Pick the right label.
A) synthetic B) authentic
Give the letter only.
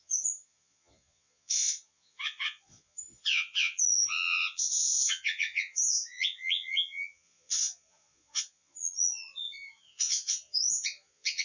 A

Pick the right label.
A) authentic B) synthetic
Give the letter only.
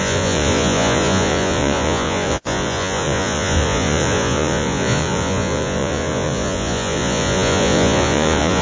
B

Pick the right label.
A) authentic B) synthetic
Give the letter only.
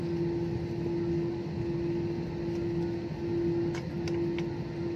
A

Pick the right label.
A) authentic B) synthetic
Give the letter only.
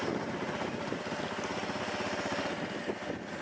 A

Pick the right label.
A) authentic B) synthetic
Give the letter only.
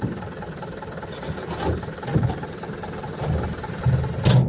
A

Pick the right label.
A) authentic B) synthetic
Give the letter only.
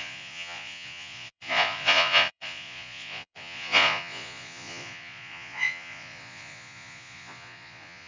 B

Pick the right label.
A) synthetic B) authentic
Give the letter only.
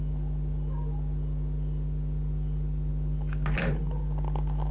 B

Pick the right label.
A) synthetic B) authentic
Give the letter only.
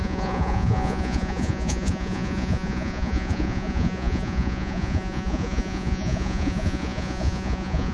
A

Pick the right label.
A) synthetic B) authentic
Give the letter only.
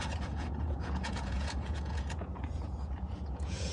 A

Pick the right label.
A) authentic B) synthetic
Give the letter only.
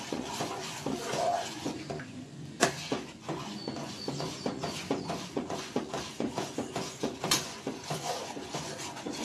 B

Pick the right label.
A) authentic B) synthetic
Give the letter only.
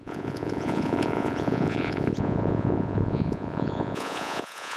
B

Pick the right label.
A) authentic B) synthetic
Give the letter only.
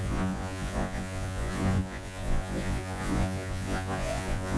B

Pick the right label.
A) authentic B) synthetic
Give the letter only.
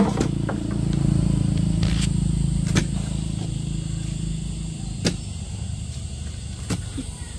A